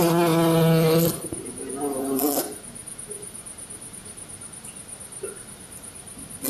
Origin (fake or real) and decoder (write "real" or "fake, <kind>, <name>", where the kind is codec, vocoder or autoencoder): real